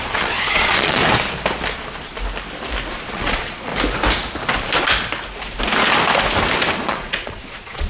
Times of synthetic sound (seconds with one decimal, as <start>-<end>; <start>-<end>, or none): 0.0-1.0; 3.0-3.7; 6.9-7.9